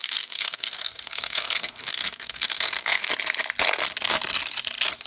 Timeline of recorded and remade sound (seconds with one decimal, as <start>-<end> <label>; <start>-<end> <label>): 0.0-3.1 remade; 3.1-5.1 recorded